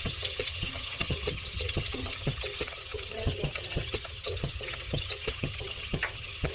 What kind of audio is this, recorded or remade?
remade